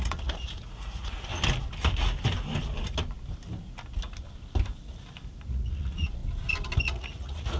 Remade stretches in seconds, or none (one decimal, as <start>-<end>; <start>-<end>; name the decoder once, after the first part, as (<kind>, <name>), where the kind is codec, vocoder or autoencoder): 0.0-1.3 (vocoder, Vocos); 5.5-6.2; 6.8-7.6